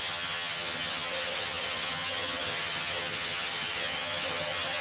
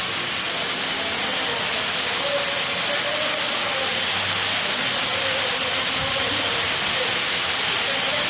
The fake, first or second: first